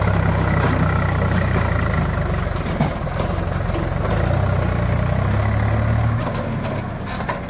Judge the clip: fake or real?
real